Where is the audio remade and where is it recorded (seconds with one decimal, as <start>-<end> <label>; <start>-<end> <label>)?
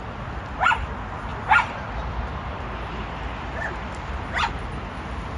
0.0-5.4 recorded